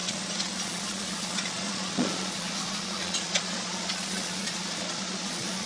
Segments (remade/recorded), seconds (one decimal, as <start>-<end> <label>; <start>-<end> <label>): 0.0-5.7 remade